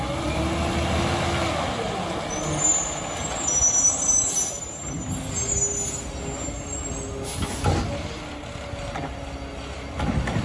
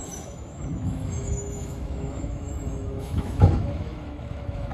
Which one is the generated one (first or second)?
second